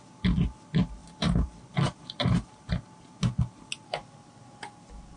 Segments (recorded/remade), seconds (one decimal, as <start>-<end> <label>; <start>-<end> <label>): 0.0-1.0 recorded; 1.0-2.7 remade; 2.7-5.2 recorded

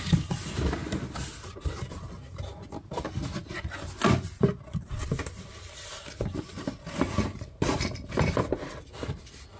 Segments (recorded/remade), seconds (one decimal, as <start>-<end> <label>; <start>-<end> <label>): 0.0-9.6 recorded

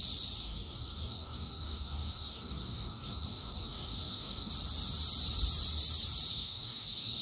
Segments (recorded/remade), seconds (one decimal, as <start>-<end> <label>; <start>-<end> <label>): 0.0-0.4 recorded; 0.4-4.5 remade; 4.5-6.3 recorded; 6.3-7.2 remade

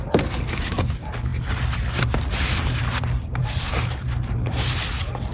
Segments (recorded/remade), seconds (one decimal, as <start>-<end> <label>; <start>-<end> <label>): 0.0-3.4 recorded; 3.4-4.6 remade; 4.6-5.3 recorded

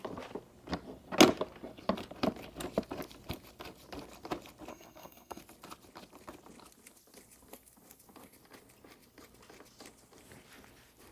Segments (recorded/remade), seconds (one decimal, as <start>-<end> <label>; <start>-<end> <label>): 0.0-4.7 recorded; 4.7-5.4 remade; 5.4-11.1 recorded

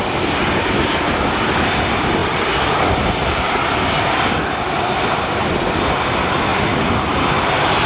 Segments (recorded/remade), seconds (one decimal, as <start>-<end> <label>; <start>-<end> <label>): 0.0-7.9 recorded

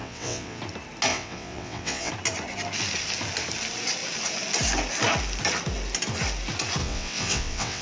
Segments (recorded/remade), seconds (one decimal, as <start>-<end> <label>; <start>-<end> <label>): 0.0-0.6 remade; 0.6-1.1 recorded; 1.1-2.1 remade; 2.1-6.8 recorded; 6.8-7.8 remade